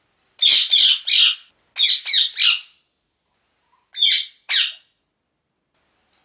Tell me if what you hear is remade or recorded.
recorded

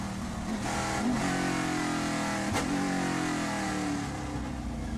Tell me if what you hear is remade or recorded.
recorded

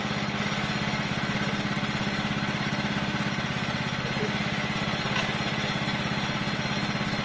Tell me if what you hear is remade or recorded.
recorded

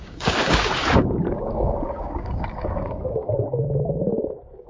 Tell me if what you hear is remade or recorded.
remade